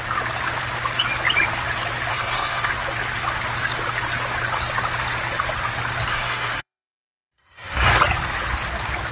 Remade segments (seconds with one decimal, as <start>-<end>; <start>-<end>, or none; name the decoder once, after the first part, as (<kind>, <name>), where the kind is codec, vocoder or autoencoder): 2.1-2.7 (codec, SNAC); 6.1-7.9